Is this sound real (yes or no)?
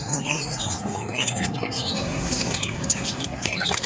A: no